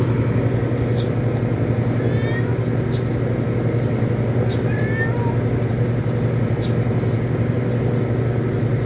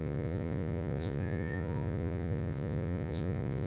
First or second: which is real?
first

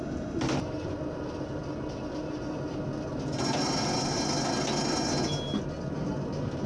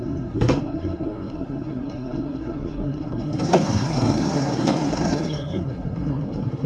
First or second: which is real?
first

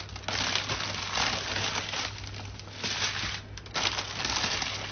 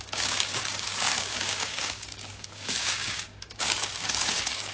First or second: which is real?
first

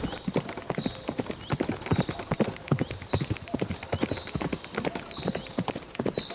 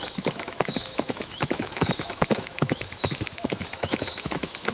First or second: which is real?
first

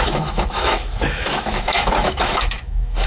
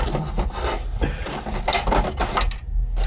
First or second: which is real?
second